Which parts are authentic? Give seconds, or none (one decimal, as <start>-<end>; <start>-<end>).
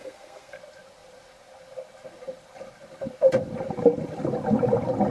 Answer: 0.6-5.1